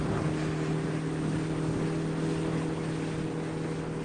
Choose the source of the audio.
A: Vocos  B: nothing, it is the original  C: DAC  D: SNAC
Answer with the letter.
B